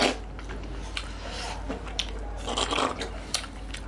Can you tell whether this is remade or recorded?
recorded